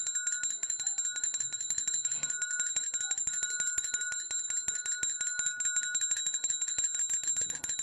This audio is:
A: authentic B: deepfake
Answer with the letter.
A